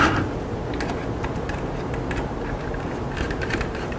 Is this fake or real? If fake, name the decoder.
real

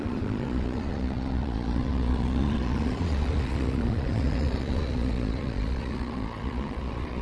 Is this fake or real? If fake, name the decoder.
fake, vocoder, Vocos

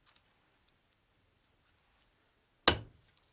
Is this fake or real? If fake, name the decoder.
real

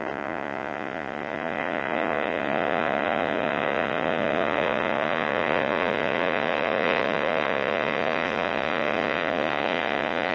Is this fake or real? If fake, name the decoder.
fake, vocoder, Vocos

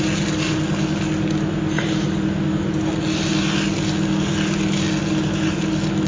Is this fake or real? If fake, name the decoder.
real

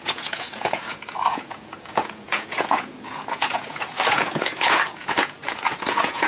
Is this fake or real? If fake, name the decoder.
fake, vocoder, Vocos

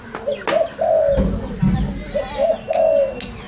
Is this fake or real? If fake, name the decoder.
real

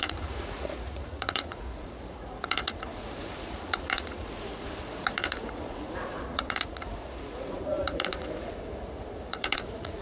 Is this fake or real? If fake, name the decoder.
fake, vocoder, Vocos